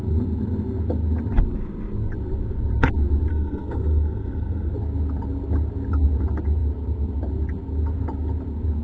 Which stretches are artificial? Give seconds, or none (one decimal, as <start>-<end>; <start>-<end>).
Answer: 3.3-4.7